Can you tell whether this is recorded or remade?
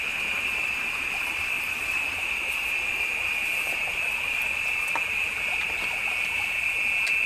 recorded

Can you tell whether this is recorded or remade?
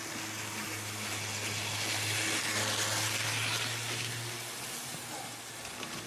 recorded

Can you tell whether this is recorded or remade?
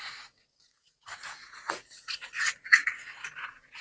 remade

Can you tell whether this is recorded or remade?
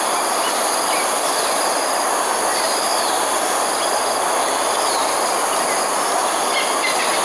recorded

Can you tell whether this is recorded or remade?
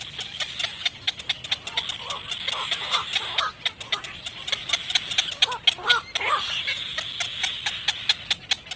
recorded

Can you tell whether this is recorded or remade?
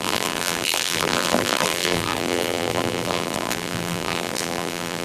remade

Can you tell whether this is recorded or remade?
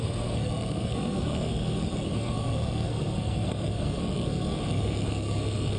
remade